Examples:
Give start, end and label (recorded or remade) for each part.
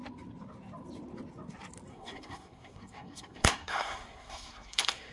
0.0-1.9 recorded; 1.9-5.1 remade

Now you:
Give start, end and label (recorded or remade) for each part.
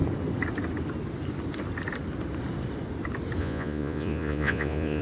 0.0-3.4 recorded; 3.4-5.0 remade